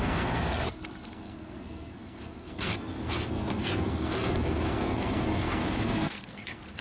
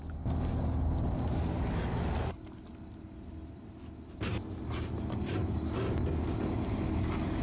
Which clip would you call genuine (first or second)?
second